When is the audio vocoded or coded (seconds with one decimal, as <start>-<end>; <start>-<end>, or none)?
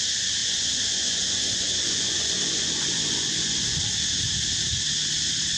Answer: 0.4-3.8